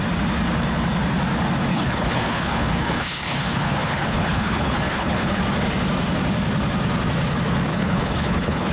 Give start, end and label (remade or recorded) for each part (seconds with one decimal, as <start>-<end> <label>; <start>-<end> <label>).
0.0-1.7 recorded; 1.7-5.4 remade; 5.4-7.7 recorded; 7.7-8.7 remade